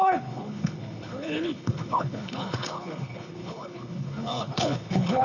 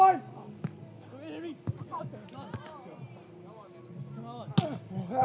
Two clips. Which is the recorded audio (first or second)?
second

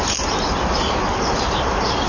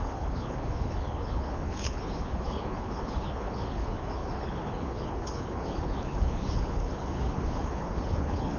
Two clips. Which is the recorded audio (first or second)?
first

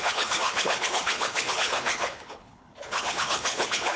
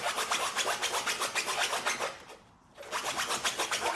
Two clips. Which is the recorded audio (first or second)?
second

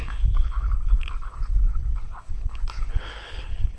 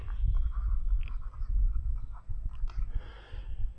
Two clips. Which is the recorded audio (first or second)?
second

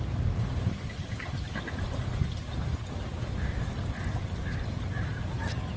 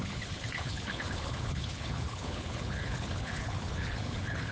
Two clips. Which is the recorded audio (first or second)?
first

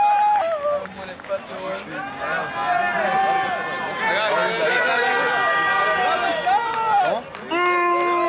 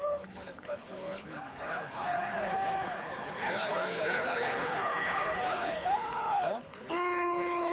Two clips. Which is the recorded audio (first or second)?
first